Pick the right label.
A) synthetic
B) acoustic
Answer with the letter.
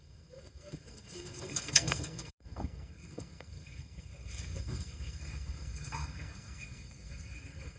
A